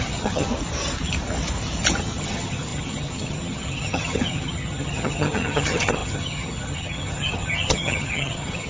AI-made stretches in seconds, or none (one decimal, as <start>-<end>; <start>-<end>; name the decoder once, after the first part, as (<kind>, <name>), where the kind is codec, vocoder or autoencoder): 0.0-0.5 (vocoder, HiFi-GAN); 2.0-8.7